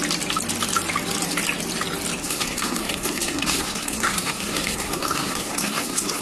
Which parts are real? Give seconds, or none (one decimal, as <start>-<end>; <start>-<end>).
0.0-2.2

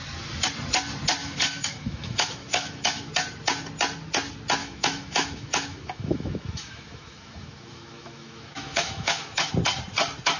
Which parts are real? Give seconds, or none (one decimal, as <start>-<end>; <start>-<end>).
0.0-1.2; 3.1-4.6; 9.5-10.4

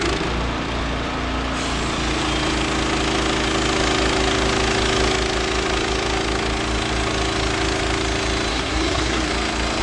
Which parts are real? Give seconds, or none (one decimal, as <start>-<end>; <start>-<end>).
0.0-8.5; 9.3-9.8

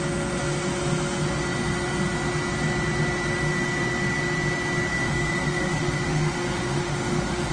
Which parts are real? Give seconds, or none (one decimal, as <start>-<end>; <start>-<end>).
0.0-4.9

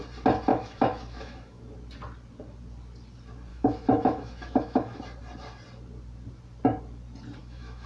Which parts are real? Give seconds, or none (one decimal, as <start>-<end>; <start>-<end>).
0.0-0.5; 1.6-3.5; 5.0-7.4

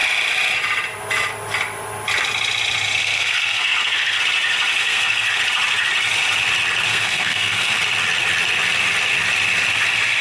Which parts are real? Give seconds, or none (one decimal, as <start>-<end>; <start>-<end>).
0.0-3.0; 4.2-4.8; 5.4-6.9; 7.8-10.2